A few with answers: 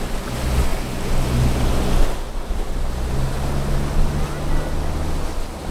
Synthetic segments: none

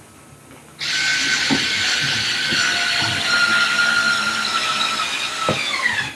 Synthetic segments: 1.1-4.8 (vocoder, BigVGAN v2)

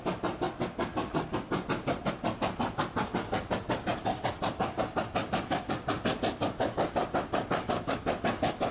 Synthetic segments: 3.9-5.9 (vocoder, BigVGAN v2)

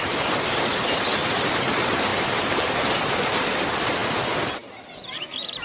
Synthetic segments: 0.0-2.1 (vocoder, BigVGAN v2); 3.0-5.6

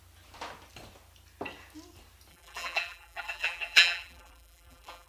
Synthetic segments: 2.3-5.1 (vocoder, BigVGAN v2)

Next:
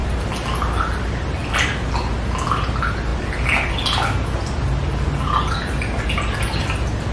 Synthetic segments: none

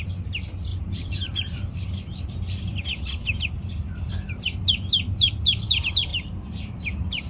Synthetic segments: 0.7-2.2 (vocoder, BigVGAN v2); 6.1-6.6

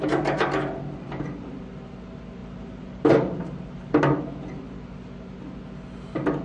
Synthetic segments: 2.4-4.0 (vocoder, BigVGAN v2)